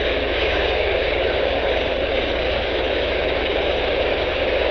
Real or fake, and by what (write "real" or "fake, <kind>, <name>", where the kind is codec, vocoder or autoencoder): fake, codec, DAC